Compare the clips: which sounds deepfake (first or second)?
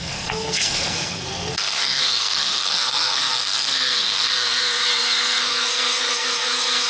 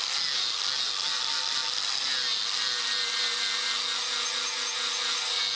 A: first